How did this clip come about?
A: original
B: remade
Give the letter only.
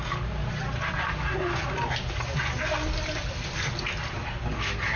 A